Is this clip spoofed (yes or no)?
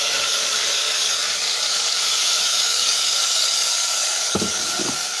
yes